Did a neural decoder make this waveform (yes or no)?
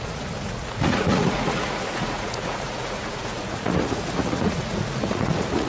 yes